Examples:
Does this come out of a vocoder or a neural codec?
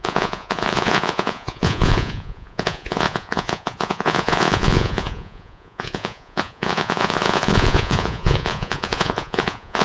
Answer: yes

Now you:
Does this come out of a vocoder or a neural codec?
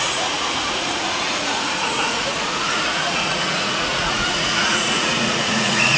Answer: yes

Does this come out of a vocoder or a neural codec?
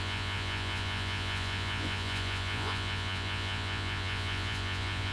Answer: yes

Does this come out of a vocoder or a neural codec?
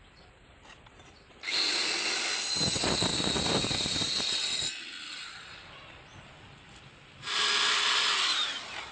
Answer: no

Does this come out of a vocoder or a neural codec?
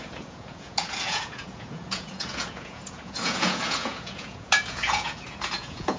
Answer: yes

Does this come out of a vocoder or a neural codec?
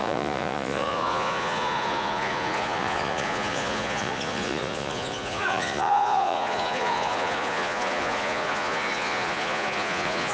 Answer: yes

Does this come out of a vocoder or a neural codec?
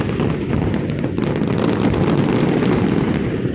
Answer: no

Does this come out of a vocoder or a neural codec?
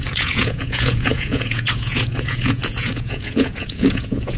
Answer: yes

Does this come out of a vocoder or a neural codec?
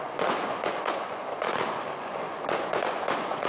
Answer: yes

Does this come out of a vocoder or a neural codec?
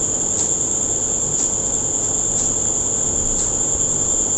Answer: no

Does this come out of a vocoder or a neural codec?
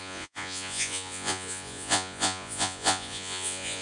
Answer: yes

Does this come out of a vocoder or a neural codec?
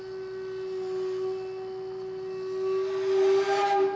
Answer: no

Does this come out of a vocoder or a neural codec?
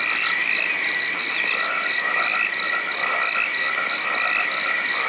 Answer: no